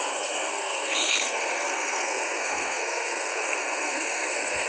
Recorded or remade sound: remade